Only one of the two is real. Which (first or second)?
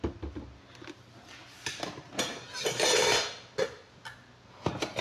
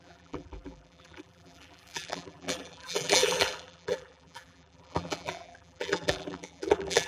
first